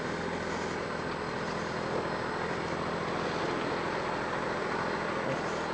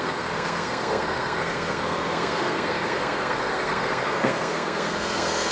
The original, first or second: first